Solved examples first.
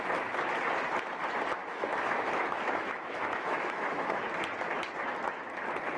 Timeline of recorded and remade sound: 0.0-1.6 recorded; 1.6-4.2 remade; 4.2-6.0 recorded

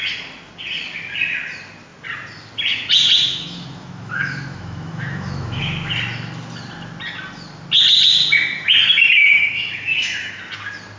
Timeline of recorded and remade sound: 0.0-3.3 recorded; 3.3-5.6 remade; 5.6-9.2 recorded; 9.2-10.4 remade; 10.4-11.0 recorded

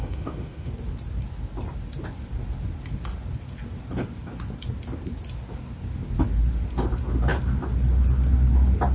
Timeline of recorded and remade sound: 0.0-0.7 remade; 0.7-8.9 recorded

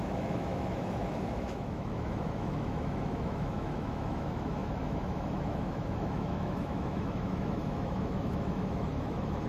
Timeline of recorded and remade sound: 0.0-9.5 remade

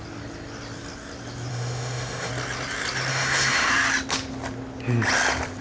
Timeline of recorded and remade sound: 0.0-1.5 recorded; 1.5-2.3 remade; 2.3-3.1 recorded; 3.1-3.7 remade; 3.7-5.6 recorded

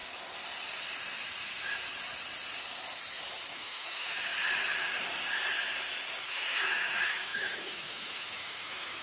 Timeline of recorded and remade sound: 0.0-3.5 recorded; 3.5-4.3 remade; 4.3-6.3 recorded; 6.3-9.0 remade

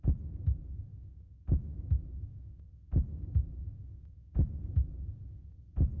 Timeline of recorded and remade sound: 0.0-0.9 recorded; 0.9-4.5 remade; 4.5-6.0 recorded

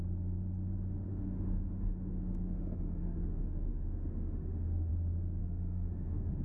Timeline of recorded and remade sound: 0.0-1.1 recorded; 1.1-4.9 remade; 4.9-5.4 recorded; 5.4-6.4 remade